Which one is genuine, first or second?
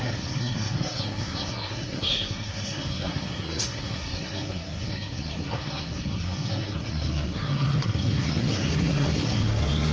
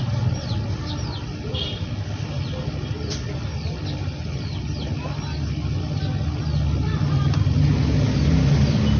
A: second